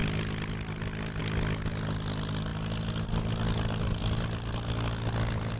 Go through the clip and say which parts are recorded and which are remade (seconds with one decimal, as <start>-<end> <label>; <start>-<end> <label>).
0.0-5.6 recorded